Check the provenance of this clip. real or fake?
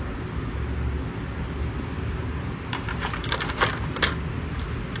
real